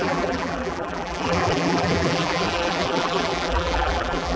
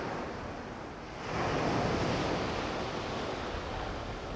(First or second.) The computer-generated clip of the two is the first